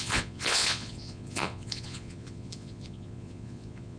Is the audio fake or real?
fake